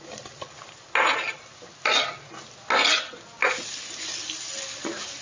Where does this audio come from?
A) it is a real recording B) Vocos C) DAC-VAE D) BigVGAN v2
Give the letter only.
A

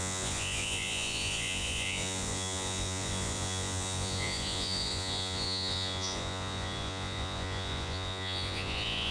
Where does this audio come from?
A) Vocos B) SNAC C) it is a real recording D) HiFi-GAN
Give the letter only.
A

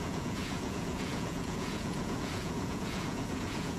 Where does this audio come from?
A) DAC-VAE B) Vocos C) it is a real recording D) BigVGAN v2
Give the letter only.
B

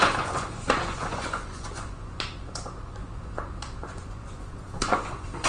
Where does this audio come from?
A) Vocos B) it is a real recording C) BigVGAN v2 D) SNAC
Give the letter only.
A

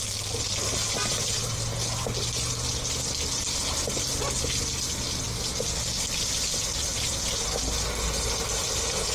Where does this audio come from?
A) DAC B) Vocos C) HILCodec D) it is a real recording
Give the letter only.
D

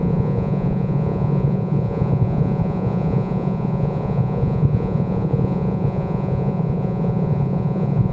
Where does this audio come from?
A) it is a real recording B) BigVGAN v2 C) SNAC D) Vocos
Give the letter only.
D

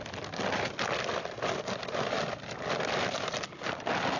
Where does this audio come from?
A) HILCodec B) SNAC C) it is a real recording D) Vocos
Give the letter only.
C